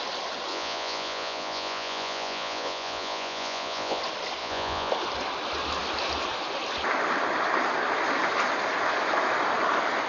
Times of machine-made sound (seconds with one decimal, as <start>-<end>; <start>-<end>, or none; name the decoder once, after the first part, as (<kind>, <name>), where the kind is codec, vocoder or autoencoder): 0.5-4.0 (vocoder, Vocos); 4.4-4.9